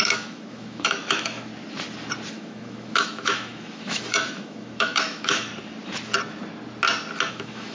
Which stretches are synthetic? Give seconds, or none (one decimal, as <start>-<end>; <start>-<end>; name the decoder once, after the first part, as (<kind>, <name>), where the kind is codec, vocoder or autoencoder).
0.0-1.5 (autoencoder, DAC-VAE); 2.3-5.5; 7.3-7.7